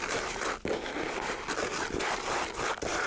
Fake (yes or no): no